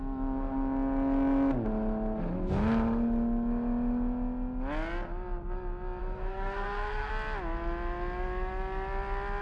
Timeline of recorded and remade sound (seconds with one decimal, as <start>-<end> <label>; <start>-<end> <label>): 0.0-6.0 recorded; 6.0-7.1 remade; 7.1-9.4 recorded